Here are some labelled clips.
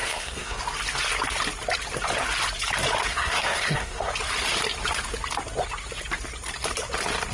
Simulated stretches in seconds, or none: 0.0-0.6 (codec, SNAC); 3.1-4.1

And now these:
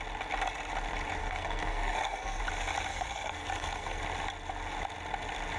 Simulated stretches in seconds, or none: 1.2-2.4 (codec, SNAC); 2.9-4.0